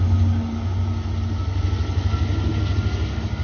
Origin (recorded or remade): recorded